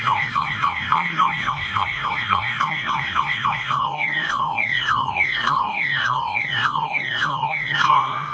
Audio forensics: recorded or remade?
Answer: remade